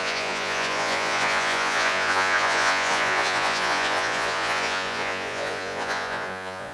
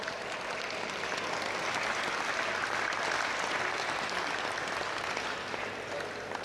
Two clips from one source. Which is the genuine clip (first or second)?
second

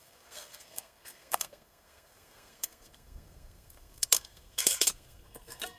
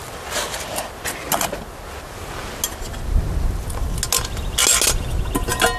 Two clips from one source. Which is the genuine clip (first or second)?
second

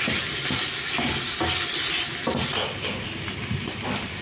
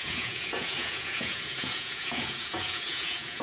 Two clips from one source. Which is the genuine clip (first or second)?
first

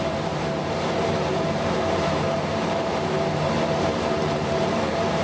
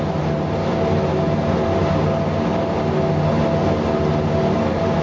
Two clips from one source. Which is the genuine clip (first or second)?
second